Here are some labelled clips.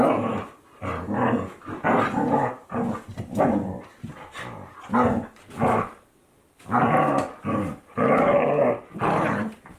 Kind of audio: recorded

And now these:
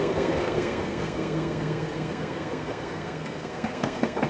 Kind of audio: remade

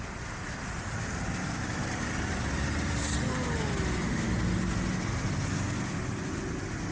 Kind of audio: recorded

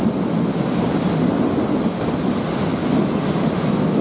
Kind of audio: recorded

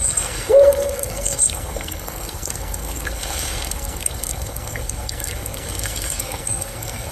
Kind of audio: remade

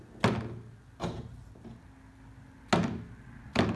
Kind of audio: recorded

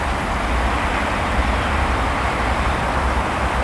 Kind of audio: remade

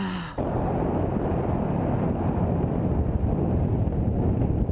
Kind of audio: recorded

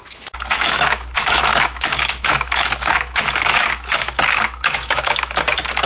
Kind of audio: remade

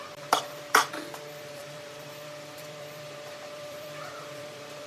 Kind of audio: remade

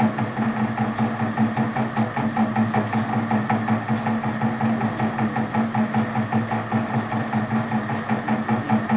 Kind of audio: recorded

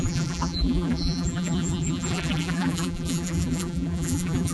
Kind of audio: remade